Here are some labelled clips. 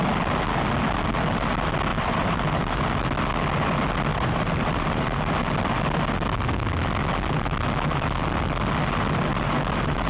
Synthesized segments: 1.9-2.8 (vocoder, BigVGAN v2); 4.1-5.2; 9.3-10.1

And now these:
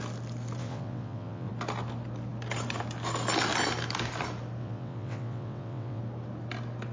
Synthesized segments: 0.6-1.5 (vocoder, WaveNeXt); 4.6-6.0

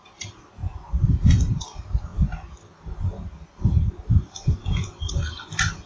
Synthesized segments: none

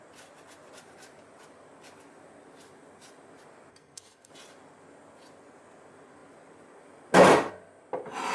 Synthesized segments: 3.7-4.3 (codec, SNAC)

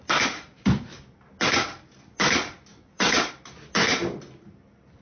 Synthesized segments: 2.7-3.3 (vocoder, WaveNeXt)